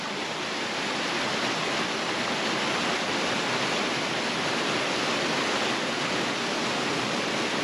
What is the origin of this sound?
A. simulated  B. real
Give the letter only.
B